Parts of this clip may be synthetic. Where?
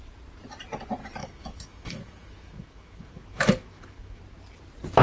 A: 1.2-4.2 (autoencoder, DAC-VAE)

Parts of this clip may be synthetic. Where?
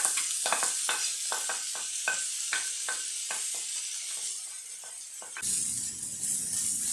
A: none